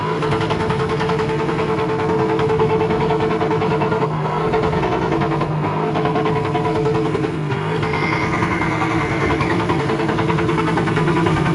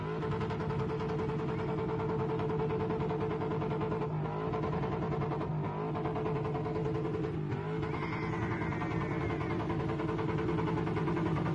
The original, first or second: second